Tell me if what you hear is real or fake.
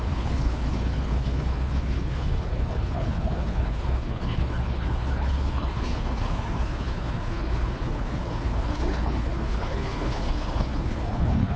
fake